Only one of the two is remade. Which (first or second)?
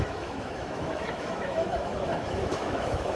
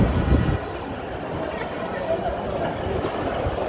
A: first